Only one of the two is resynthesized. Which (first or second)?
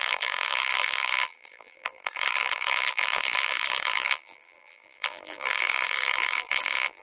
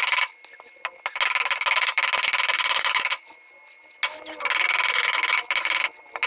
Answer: first